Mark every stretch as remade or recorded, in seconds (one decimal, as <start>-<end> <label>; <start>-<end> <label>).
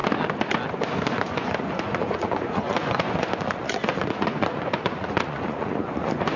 0.0-1.1 recorded; 1.1-6.4 remade